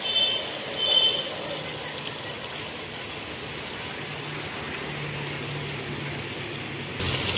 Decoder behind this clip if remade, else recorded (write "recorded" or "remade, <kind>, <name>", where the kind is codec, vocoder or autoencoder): recorded